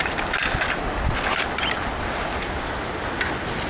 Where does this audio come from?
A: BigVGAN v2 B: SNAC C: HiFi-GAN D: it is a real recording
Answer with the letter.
D